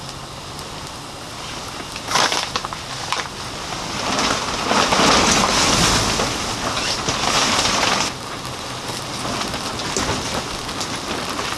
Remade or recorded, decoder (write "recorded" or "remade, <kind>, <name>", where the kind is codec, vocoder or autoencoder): recorded